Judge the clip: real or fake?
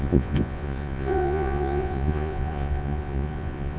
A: fake